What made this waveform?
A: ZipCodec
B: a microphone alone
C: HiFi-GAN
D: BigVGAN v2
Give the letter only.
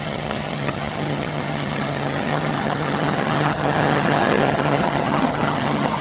C